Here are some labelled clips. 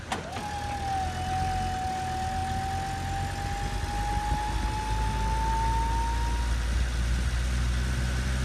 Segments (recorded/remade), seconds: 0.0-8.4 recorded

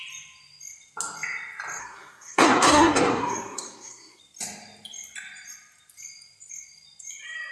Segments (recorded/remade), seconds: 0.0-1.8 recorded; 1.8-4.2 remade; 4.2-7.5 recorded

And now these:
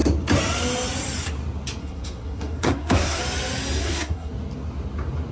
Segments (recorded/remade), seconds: 0.0-1.8 recorded; 1.8-3.2 remade; 3.2-3.8 recorded; 3.8-4.3 remade; 4.3-5.3 recorded

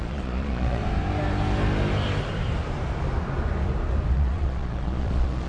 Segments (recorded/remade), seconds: 0.0-0.8 remade; 0.8-4.1 recorded; 4.1-5.5 remade

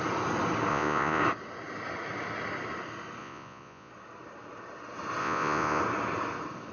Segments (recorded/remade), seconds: 0.0-0.7 recorded; 0.7-1.2 remade; 1.2-3.2 recorded; 3.2-3.9 remade; 3.9-5.2 recorded; 5.2-5.8 remade; 5.8-6.7 recorded

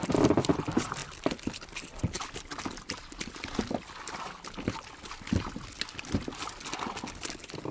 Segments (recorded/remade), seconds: 0.0-7.7 recorded